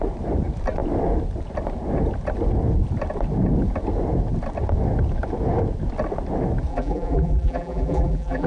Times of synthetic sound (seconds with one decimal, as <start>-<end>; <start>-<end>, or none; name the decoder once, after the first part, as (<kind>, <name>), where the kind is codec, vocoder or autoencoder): 6.7-8.5 (vocoder, BigVGAN v2)

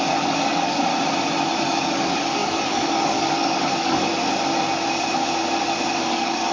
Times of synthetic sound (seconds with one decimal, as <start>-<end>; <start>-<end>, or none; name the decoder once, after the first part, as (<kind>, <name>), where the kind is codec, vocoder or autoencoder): 0.0-0.9 (codec, DAC); 1.6-4.1; 6.1-6.5

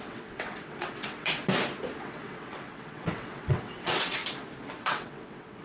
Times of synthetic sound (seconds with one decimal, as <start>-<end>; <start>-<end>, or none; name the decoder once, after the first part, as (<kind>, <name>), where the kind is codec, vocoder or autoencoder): 0.0-1.4 (vocoder, WaveNeXt); 2.0-4.2; 4.7-5.6

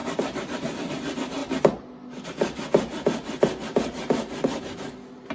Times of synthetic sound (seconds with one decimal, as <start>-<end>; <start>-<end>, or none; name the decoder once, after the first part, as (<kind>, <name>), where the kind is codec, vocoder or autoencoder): none

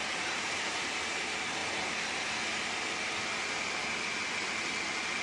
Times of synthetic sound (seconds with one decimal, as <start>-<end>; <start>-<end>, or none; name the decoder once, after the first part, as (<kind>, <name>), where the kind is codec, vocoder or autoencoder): 0.0-0.8 (vocoder, BigVGAN v2)